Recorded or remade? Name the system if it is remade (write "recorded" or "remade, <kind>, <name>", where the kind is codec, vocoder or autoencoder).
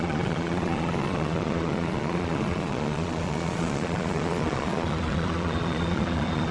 remade, vocoder, Vocos